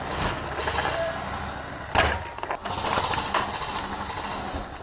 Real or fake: real